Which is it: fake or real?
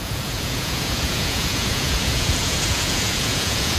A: fake